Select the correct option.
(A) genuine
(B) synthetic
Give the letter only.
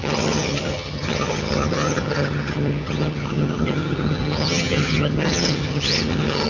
B